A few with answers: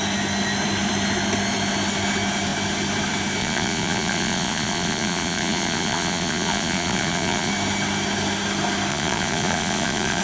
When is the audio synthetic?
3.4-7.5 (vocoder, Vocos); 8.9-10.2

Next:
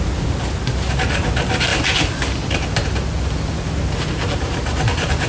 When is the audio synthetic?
none

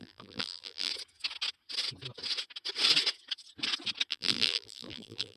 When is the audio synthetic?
0.0-0.9 (vocoder, BigVGAN v2); 4.1-5.4

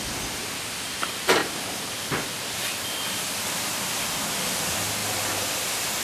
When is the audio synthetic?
1.4-4.5 (vocoder, BigVGAN v2)

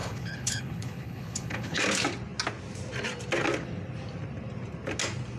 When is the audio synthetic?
0.0-1.8 (codec, HILCodec)